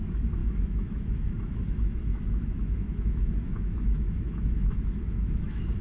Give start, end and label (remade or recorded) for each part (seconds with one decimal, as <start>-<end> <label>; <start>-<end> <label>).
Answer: 0.0-5.8 remade